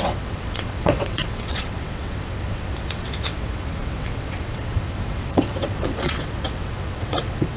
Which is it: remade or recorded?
remade